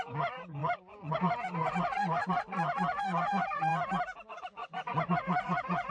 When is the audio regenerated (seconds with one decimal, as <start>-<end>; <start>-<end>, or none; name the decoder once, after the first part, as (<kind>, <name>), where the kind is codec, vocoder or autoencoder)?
0.0-3.7 (vocoder, Vocos); 4.3-5.9